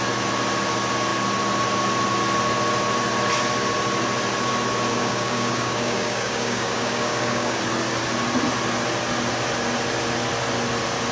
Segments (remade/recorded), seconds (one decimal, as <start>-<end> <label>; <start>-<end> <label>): 0.0-5.0 recorded; 5.0-7.6 remade; 7.6-11.1 recorded